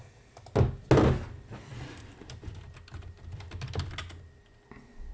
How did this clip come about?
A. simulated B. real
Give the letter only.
B